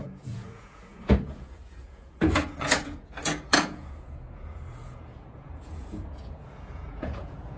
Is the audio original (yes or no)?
no